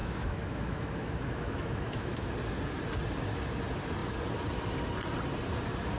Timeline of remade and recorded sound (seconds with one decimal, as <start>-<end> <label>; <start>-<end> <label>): 0.0-2.3 remade; 2.3-6.0 recorded